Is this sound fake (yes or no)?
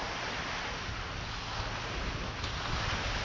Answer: no